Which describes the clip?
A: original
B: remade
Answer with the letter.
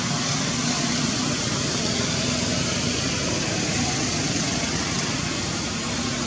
A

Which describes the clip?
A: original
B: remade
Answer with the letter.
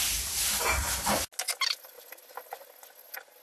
A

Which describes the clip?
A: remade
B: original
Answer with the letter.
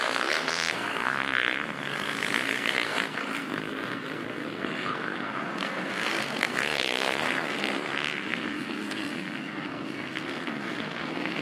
A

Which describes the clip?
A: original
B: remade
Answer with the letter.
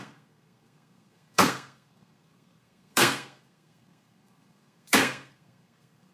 B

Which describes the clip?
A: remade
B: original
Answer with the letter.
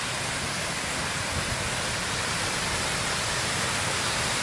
B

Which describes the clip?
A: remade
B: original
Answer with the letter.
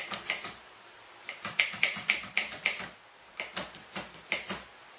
B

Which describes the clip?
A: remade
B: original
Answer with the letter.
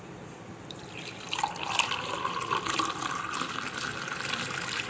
B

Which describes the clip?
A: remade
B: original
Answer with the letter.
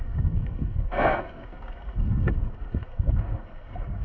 A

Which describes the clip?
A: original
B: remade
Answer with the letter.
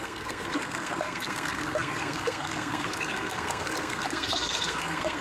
B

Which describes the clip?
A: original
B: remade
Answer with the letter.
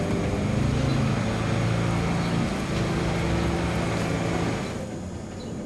A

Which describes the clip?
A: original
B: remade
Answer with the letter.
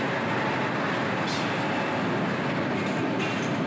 A